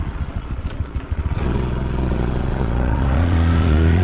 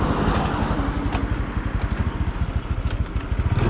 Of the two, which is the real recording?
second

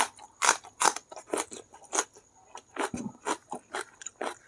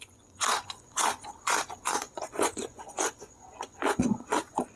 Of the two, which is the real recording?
first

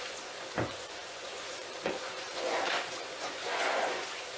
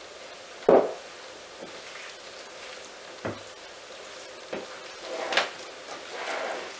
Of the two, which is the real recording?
second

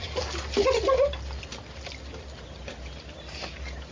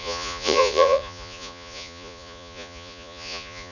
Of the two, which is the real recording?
first